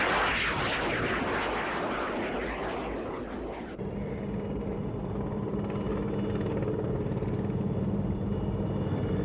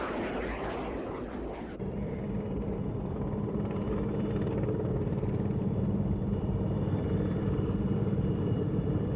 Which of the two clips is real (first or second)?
first